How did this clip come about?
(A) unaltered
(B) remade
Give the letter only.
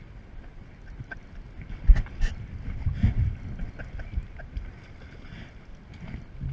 A